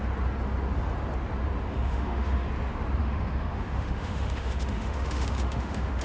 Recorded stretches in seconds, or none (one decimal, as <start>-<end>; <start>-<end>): 0.0-1.7; 2.5-3.0

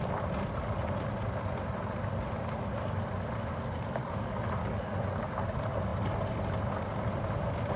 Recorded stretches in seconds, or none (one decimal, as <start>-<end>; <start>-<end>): 0.0-4.0; 5.0-7.8

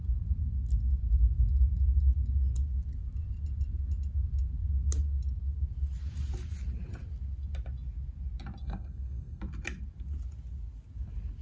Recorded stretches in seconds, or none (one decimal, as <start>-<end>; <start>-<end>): 0.0-8.6; 9.4-11.4

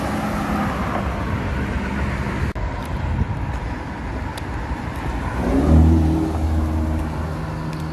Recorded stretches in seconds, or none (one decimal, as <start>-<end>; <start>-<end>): 0.0-4.3; 5.5-7.9

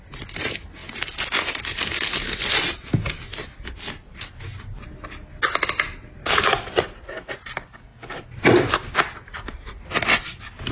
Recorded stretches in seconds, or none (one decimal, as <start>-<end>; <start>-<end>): 0.0-6.2; 6.8-10.7

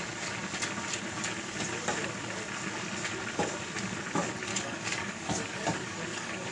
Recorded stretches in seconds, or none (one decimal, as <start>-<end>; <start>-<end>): 0.0-4.5

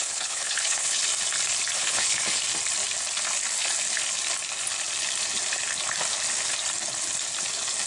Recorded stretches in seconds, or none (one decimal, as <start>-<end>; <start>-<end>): 1.0-1.8; 2.4-7.9

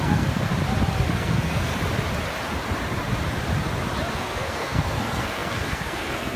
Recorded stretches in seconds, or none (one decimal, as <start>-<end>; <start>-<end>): 0.5-1.1; 1.7-4.1